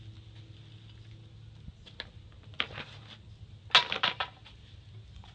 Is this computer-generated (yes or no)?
no